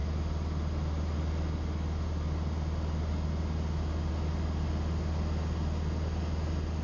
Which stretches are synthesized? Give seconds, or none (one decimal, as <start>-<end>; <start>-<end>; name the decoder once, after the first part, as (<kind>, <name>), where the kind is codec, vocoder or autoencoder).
none